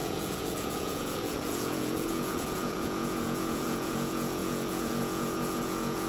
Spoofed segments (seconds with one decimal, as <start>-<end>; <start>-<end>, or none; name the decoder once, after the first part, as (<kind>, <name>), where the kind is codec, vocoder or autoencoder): 0.0-6.1 (vocoder, Vocos)